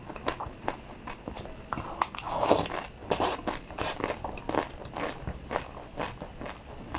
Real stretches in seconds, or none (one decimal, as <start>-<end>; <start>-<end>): 0.0-7.0